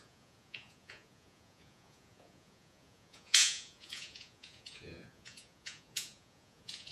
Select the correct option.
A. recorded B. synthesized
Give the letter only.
B